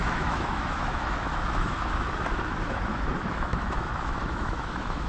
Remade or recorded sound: remade